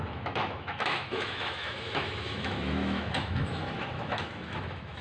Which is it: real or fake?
fake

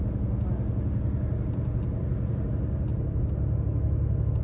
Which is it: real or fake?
real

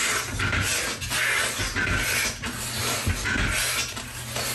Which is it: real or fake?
real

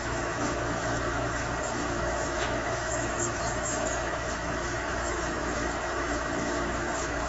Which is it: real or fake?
fake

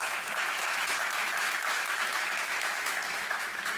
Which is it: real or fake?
fake